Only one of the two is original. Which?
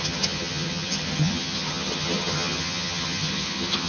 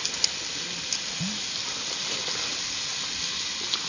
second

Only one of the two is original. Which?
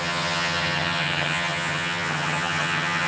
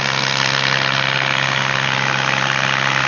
second